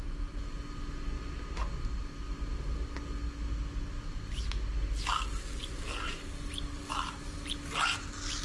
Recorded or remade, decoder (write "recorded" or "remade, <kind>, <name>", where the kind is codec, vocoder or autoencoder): recorded